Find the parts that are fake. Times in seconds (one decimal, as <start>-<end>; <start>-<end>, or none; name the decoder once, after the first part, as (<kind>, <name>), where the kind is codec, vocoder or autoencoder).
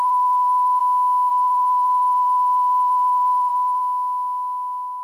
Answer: 0.0-0.8 (vocoder, BigVGAN v2); 1.3-3.8